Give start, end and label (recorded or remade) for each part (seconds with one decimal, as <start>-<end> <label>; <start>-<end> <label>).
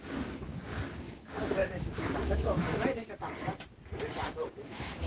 0.0-2.7 remade; 2.7-4.3 recorded; 4.3-5.1 remade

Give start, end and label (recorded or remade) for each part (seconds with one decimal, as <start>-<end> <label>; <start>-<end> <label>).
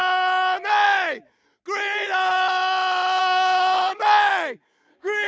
0.0-3.2 recorded; 3.2-4.0 remade; 4.0-4.6 recorded; 4.6-5.3 remade